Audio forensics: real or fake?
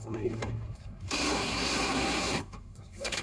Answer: fake